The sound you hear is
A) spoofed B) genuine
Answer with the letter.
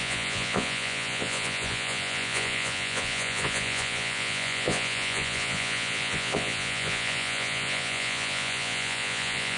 A